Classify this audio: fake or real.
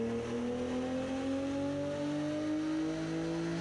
real